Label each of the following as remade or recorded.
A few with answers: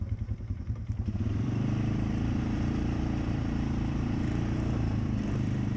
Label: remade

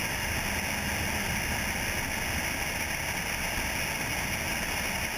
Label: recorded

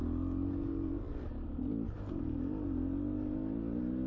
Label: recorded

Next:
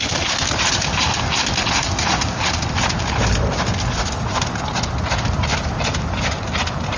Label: recorded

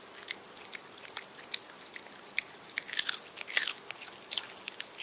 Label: recorded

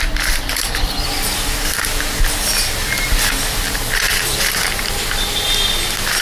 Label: recorded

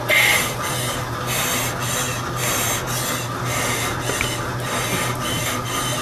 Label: recorded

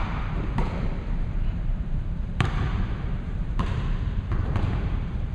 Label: remade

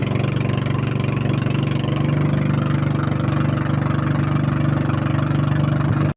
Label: recorded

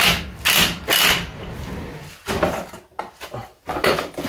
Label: recorded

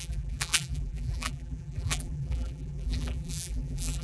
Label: remade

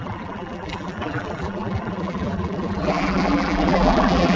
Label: remade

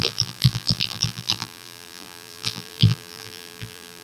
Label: remade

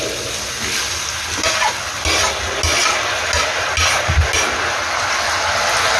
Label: recorded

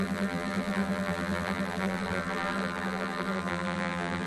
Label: remade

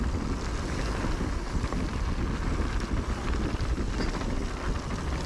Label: recorded